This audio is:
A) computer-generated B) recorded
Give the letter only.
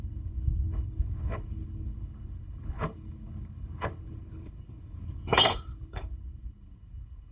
A